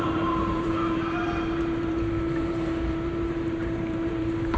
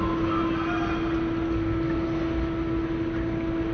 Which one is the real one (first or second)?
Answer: second